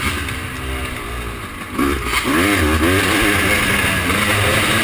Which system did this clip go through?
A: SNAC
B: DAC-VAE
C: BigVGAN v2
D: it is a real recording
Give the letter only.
D